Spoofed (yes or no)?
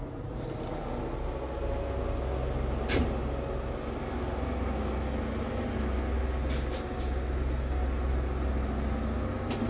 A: no